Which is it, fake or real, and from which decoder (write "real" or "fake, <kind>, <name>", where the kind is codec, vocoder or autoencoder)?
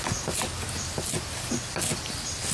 real